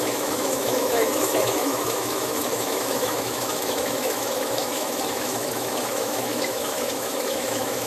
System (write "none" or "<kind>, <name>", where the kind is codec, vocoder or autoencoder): autoencoder, DAC-VAE